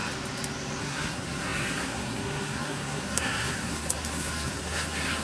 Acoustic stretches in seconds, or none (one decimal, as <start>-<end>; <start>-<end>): 0.0-0.8